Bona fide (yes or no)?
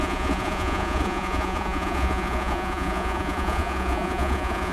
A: no